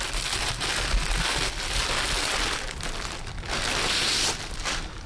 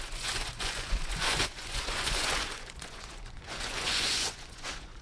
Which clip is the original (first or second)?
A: first